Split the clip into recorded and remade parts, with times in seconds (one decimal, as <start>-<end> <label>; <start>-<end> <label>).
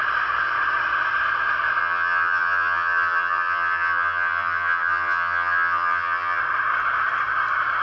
0.0-1.8 recorded; 1.8-6.4 remade; 6.4-7.8 recorded